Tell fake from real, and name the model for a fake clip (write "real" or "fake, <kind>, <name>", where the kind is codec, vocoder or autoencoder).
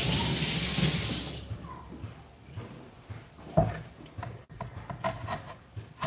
fake, vocoder, BigVGAN v2